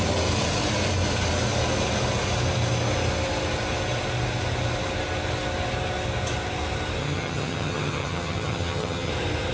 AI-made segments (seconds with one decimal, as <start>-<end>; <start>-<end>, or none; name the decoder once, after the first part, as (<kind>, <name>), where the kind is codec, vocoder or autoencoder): 7.0-9.1 (vocoder, HiFi-GAN)